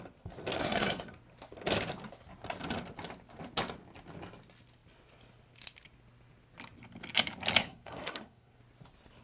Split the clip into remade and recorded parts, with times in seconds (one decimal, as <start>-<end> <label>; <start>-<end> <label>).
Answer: 0.0-0.6 recorded; 0.6-1.1 remade; 1.1-7.6 recorded; 7.6-8.6 remade; 8.6-9.2 recorded